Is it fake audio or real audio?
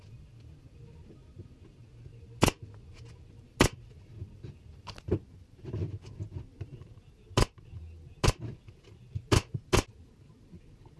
real